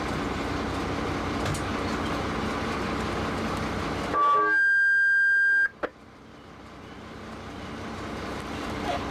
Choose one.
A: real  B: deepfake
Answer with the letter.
A